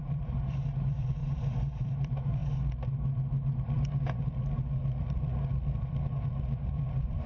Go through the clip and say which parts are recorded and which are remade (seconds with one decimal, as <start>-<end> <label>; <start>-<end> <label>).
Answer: 0.0-2.4 remade; 2.4-6.6 recorded; 6.6-7.3 remade